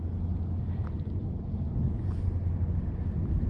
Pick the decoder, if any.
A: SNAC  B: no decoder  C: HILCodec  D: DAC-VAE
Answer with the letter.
B